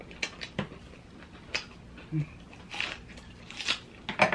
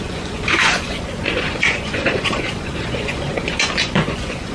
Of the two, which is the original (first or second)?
first